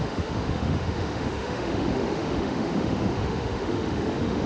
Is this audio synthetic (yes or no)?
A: yes